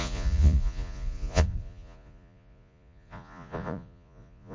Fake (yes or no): yes